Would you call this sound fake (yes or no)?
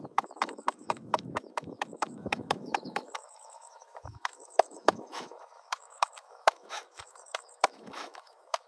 yes